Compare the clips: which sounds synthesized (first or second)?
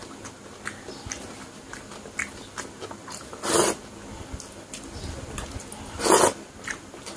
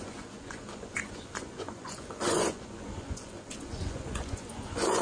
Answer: second